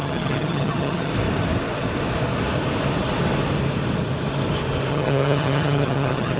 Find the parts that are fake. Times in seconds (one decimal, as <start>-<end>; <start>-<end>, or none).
0.0-1.1; 4.9-6.4